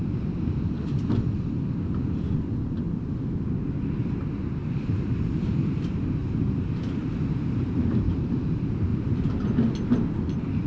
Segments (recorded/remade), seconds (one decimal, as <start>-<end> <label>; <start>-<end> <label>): 0.0-4.6 recorded; 4.6-5.8 remade; 5.8-6.2 recorded; 6.2-7.9 remade; 7.9-10.7 recorded